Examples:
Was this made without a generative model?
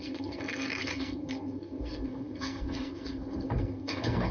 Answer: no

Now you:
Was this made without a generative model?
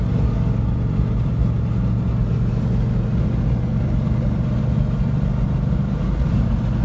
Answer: yes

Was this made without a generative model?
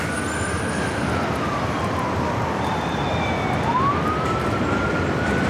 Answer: yes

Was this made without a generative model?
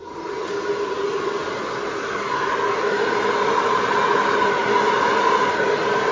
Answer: yes